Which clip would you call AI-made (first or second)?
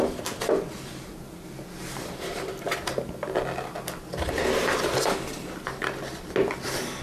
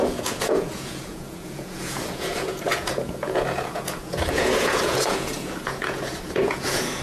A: second